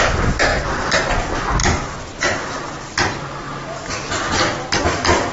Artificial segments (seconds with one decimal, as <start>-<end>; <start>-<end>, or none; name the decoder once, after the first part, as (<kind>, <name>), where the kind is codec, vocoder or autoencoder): none